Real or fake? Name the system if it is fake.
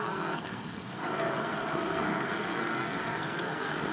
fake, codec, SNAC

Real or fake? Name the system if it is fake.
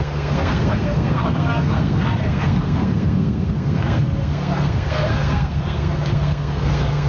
fake, codec, SNAC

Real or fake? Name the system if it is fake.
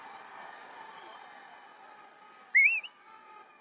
real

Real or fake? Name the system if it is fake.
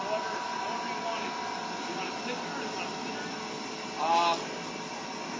real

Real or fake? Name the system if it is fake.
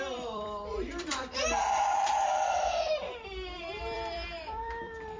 fake, vocoder, BigVGAN v2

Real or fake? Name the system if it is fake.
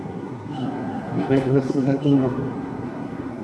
fake, codec, SNAC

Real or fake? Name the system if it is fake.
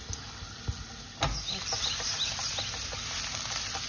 real